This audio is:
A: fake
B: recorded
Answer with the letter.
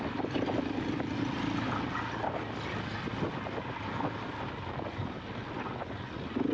B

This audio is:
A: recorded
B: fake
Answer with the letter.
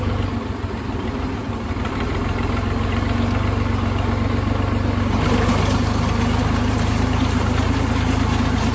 A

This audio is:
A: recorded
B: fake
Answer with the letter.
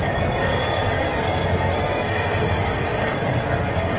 B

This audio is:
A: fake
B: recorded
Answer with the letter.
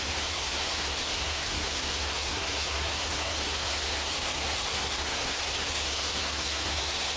A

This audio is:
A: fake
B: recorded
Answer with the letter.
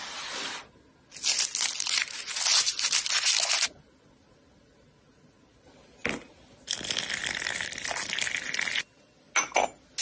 B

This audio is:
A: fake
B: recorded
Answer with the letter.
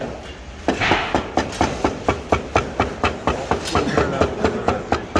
B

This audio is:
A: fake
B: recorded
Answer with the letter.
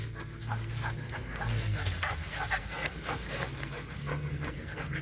A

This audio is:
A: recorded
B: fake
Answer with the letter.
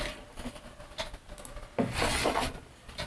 A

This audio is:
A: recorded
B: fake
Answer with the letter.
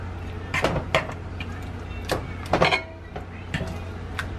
A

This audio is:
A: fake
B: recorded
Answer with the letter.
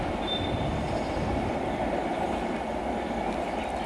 B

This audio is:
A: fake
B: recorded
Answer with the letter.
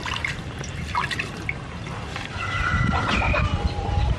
B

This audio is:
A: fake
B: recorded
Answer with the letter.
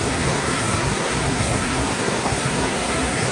A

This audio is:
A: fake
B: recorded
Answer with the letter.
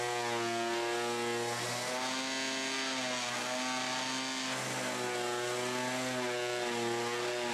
B